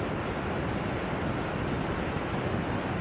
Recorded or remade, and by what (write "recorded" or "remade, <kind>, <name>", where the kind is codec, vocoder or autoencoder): recorded